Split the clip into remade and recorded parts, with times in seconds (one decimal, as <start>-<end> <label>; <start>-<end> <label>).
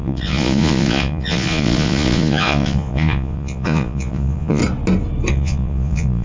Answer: 0.0-4.6 remade; 4.6-5.3 recorded; 5.3-6.2 remade